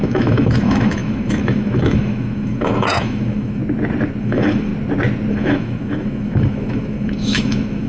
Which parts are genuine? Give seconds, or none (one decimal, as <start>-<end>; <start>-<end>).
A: 3.6-4.2; 4.7-5.3